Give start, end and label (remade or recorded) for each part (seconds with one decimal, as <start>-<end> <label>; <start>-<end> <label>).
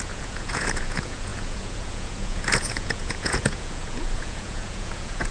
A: 0.0-5.3 remade